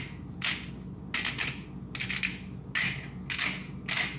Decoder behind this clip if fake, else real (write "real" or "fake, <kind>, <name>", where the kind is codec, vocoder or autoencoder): real